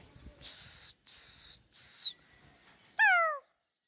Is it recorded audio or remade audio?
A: recorded